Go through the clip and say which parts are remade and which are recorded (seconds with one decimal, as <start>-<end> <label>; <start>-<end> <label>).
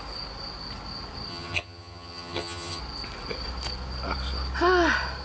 0.0-1.3 recorded; 1.3-2.8 remade; 2.8-5.2 recorded